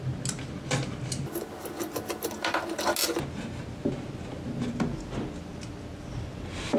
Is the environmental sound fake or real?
real